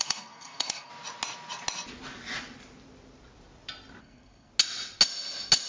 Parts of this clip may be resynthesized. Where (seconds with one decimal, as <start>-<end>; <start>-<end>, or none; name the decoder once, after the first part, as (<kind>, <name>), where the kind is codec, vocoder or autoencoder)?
0.0-0.9 (codec, SNAC); 4.0-4.5